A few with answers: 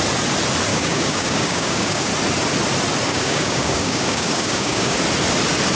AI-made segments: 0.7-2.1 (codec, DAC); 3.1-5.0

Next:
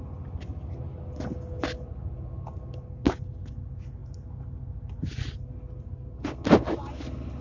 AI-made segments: none

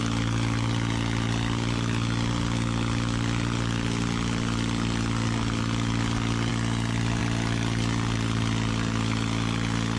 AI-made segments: 6.5-7.2 (vocoder, BigVGAN v2)